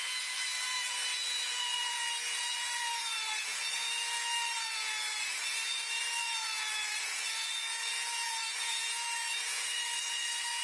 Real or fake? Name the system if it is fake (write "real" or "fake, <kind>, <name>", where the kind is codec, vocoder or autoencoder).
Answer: fake, vocoder, Vocos